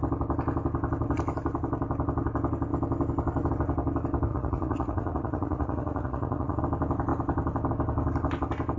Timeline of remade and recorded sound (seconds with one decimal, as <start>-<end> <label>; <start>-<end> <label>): 0.0-4.3 recorded; 4.3-6.6 remade; 6.6-8.8 recorded